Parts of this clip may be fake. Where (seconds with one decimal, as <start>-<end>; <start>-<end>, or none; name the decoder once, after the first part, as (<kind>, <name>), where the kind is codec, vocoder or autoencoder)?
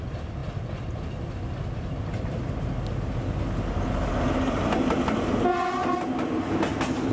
none